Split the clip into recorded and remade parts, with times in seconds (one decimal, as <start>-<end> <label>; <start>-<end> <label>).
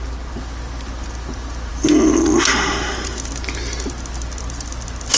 0.0-5.2 recorded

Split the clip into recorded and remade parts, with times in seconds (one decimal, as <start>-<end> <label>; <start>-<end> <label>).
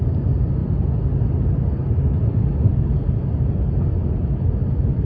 0.0-5.0 recorded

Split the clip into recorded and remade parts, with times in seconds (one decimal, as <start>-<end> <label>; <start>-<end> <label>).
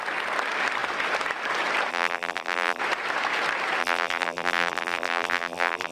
0.0-1.9 recorded; 1.9-2.8 remade; 2.8-3.8 recorded; 3.8-5.9 remade